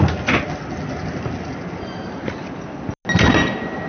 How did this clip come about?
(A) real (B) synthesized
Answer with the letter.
A